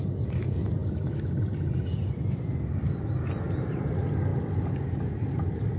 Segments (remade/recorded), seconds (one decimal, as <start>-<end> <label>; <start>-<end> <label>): 0.0-5.8 recorded